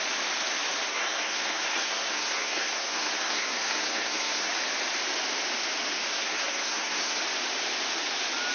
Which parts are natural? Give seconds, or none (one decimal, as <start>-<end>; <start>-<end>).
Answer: 0.0-0.9; 4.5-6.1; 7.2-8.5